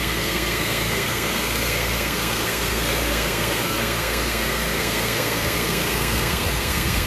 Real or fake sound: fake